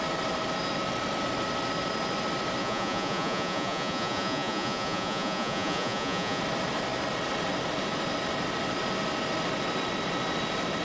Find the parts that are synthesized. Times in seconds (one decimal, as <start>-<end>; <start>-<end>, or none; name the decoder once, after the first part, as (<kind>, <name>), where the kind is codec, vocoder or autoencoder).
2.6-6.4 (vocoder, Vocos)